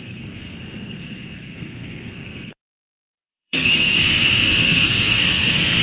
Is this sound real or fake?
fake